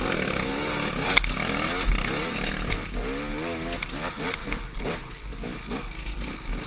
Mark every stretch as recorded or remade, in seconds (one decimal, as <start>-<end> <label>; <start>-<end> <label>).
0.0-6.7 recorded